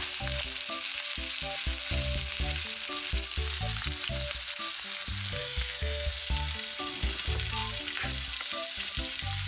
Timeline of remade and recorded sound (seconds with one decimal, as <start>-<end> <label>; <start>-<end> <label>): 0.0-5.4 recorded; 5.4-6.1 remade; 6.1-9.5 recorded